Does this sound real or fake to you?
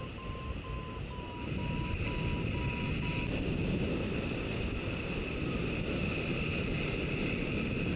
real